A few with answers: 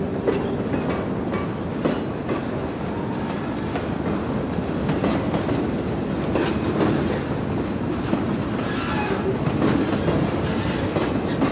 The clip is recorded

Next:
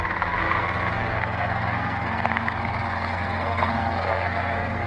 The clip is remade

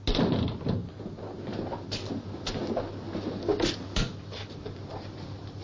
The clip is recorded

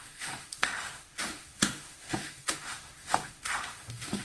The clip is remade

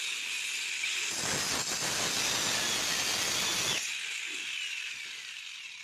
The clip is recorded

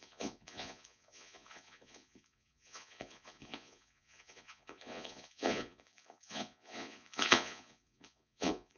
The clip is remade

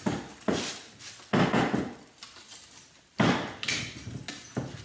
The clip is recorded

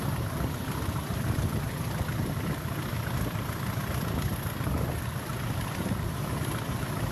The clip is remade